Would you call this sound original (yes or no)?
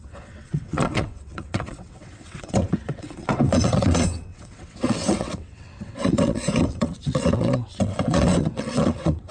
no